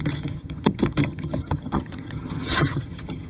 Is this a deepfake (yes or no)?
yes